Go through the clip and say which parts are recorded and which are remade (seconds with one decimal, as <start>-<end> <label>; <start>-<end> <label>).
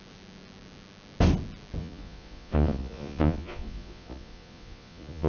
0.0-1.8 recorded; 1.8-5.3 remade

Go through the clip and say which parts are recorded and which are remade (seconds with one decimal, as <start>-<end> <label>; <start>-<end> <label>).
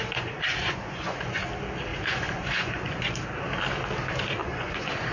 0.0-1.4 remade; 1.4-1.9 recorded; 1.9-3.1 remade; 3.1-4.4 recorded; 4.4-5.1 remade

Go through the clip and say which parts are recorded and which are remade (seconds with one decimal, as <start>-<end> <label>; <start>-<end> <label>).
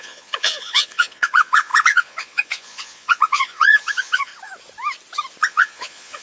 0.0-4.3 remade; 4.3-5.4 recorded; 5.4-6.2 remade